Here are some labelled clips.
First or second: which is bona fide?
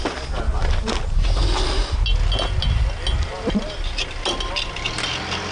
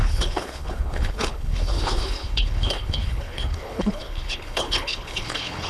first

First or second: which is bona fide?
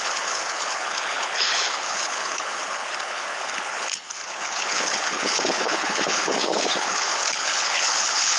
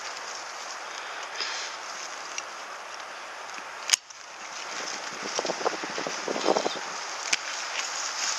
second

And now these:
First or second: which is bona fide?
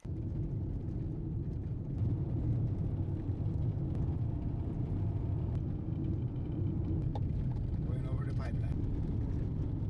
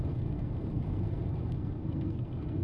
first